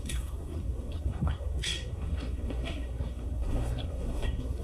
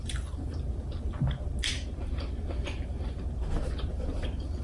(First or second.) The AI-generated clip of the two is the first